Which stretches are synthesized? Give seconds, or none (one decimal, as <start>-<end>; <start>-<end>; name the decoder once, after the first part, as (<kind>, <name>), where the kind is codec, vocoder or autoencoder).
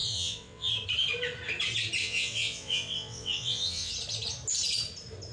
0.0-0.7 (vocoder, WaveNeXt); 2.0-3.9